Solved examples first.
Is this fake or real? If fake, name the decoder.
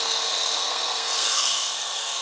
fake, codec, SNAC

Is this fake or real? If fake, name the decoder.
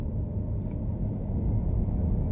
real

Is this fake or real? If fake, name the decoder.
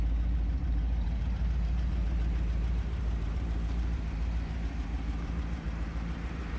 fake, vocoder, BigVGAN v2